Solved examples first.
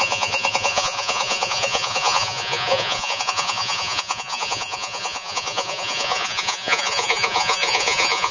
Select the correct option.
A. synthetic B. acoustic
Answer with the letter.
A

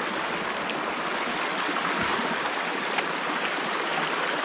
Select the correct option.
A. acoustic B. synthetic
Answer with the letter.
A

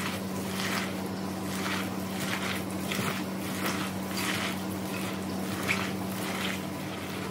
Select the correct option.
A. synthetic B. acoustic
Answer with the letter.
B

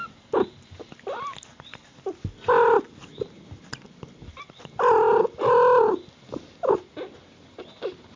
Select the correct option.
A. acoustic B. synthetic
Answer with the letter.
A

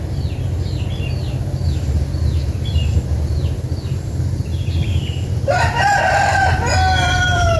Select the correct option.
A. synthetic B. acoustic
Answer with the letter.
B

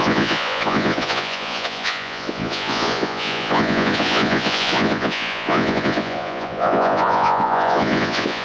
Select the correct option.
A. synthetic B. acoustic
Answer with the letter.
A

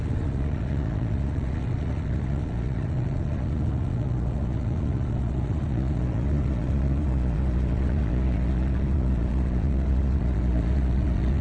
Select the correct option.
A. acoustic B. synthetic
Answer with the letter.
B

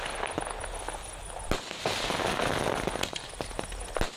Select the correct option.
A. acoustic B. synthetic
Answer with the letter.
A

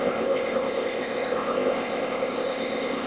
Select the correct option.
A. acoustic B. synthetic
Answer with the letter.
B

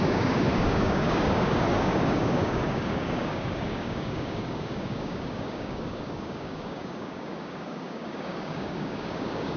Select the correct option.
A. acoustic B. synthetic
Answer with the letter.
B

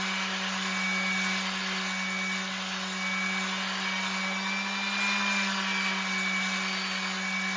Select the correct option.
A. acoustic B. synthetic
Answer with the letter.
A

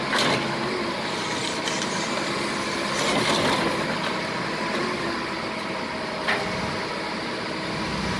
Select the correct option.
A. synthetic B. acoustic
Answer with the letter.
B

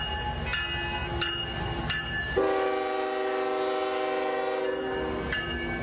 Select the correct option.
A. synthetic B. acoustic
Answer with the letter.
B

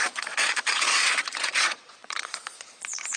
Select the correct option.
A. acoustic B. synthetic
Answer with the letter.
B